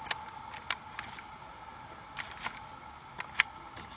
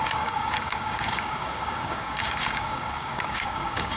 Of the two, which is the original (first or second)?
first